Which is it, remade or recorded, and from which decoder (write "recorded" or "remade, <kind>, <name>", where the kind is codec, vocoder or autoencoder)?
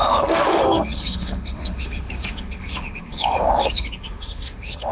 remade, autoencoder, DAC-VAE